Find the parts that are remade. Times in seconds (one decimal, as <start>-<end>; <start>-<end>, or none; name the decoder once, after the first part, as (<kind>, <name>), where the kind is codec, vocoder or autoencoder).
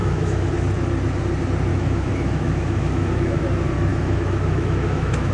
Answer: 0.0-0.5 (autoencoder, DAC-VAE); 1.7-3.4; 3.9-5.3